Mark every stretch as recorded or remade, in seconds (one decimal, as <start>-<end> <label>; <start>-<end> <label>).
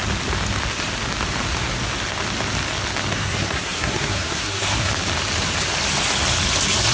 0.0-3.1 recorded; 3.1-4.9 remade; 4.9-6.9 recorded